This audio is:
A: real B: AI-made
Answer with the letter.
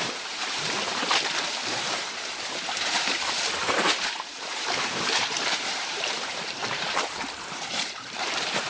B